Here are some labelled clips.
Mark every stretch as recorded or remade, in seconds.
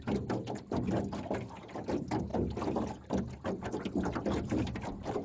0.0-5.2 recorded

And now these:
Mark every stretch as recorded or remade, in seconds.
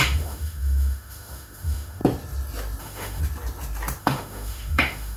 0.0-2.0 remade; 2.0-2.8 recorded; 2.8-3.2 remade; 3.2-4.0 recorded; 4.0-5.2 remade